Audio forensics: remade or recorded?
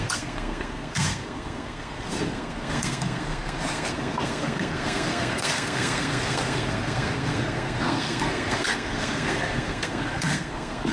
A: remade